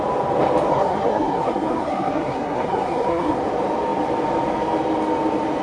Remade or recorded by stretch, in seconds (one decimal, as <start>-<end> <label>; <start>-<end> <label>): 0.0-0.7 recorded; 0.7-3.4 remade; 3.4-5.6 recorded